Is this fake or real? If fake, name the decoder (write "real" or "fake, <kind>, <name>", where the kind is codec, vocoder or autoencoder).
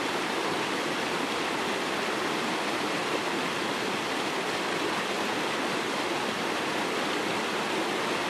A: real